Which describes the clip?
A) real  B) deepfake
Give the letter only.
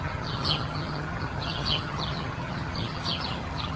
B